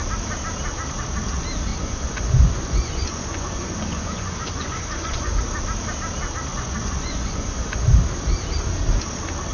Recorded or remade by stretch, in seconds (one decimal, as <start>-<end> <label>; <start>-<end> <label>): 0.0-1.7 recorded; 1.7-5.4 remade; 5.4-6.5 recorded; 6.5-7.8 remade; 7.8-9.5 recorded